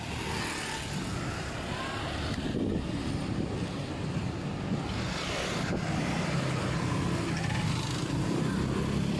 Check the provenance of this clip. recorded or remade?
recorded